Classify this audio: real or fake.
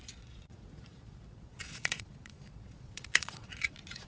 fake